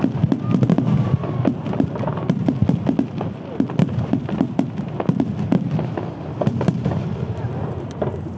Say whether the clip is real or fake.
real